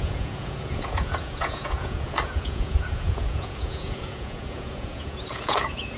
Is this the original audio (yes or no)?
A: no